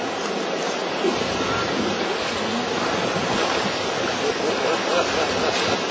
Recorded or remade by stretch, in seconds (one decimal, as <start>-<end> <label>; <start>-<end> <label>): 0.0-5.9 recorded